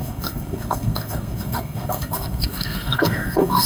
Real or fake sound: fake